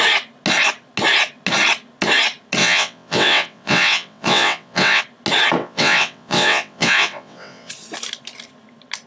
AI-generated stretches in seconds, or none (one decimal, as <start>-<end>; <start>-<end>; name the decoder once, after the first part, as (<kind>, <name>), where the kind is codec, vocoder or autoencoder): 2.6-5.0 (vocoder, WaveNeXt); 5.6-7.7